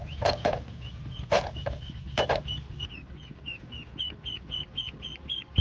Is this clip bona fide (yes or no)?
yes